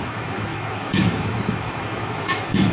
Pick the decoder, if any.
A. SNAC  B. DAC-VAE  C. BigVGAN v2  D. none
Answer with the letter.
B